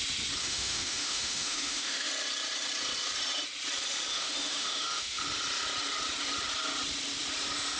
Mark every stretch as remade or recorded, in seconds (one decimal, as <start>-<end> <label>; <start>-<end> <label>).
0.0-0.4 recorded; 0.4-2.1 remade; 2.1-4.1 recorded; 4.1-5.2 remade; 5.2-7.8 recorded